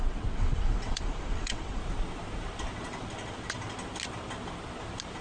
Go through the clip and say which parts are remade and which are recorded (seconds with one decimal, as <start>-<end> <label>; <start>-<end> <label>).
0.0-1.8 remade; 1.8-5.2 recorded